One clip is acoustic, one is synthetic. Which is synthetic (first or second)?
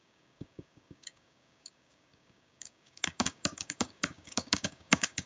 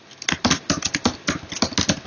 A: first